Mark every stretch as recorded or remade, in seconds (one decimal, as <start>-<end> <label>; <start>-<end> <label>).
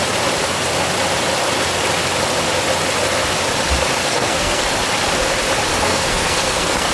0.0-4.0 recorded; 4.0-4.7 remade; 4.7-5.7 recorded; 5.7-6.9 remade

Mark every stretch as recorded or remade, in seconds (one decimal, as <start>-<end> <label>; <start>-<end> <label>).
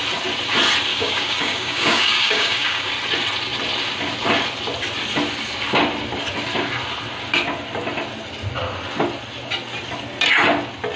0.0-0.9 recorded; 0.9-2.9 remade; 2.9-11.0 recorded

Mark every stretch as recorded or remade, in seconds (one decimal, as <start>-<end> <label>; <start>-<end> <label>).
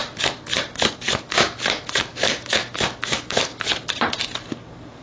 0.0-0.9 recorded; 0.9-3.5 remade; 3.5-5.0 recorded